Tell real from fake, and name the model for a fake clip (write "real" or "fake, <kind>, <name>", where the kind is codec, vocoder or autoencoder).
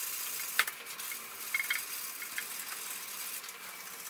real